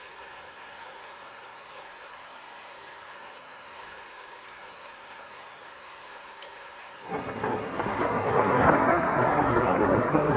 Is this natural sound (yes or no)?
no